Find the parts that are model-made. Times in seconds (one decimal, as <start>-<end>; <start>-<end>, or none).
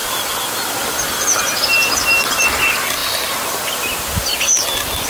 none